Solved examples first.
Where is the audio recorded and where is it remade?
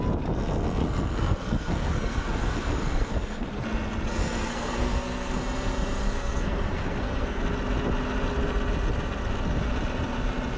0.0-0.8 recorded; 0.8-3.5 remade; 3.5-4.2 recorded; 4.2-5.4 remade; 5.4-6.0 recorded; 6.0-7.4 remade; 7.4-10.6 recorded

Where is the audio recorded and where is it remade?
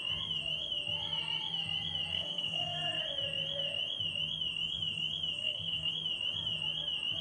0.0-2.1 recorded; 2.1-3.0 remade; 3.0-5.4 recorded; 5.4-5.9 remade; 5.9-7.2 recorded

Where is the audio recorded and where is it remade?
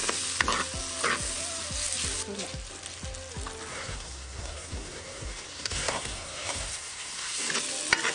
0.0-3.7 recorded; 3.7-7.5 remade; 7.5-8.1 recorded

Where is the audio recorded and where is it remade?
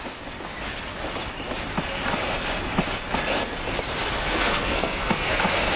0.0-4.3 recorded; 4.3-5.3 remade; 5.3-5.8 recorded